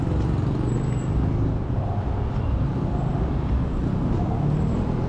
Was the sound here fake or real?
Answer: real